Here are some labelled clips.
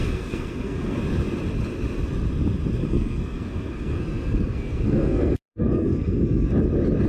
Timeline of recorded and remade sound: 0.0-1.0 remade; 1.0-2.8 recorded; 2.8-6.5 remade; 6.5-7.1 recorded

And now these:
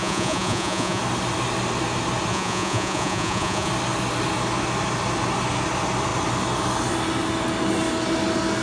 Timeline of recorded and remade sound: 0.0-1.0 remade; 1.0-2.3 recorded; 2.3-3.7 remade; 3.7-8.6 recorded

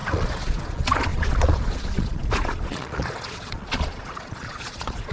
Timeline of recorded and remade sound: 0.0-5.1 remade

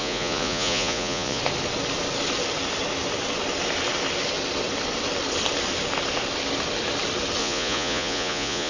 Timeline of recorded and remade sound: 0.0-1.4 remade; 1.4-7.4 recorded; 7.4-8.7 remade

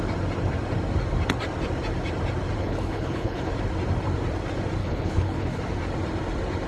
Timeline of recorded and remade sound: 0.0-2.6 recorded; 2.6-3.5 remade; 3.5-4.8 recorded; 4.8-5.6 remade; 5.6-6.7 recorded

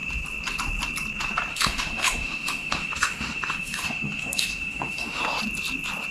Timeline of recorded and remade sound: 0.0-1.5 recorded; 1.5-5.2 remade; 5.2-6.1 recorded

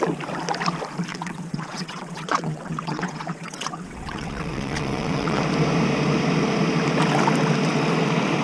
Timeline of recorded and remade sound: 0.0-1.1 recorded; 1.1-5.4 remade; 5.4-8.4 recorded